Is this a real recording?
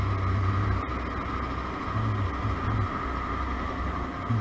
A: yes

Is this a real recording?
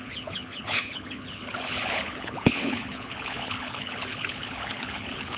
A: no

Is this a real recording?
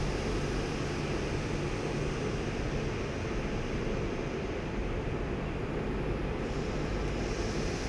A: yes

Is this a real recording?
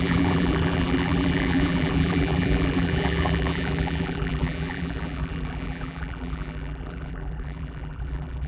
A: no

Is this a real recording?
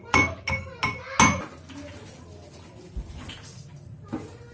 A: yes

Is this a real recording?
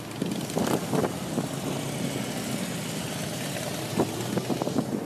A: yes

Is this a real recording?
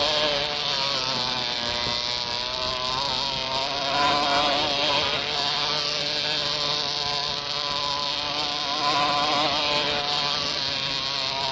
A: yes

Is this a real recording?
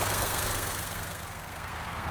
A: no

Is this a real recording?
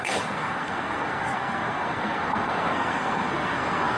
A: no